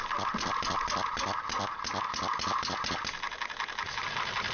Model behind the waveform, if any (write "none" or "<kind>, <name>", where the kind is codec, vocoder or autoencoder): none